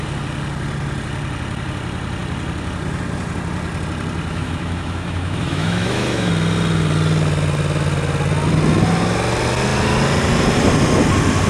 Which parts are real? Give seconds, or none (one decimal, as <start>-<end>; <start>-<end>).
0.0-4.3; 6.3-11.5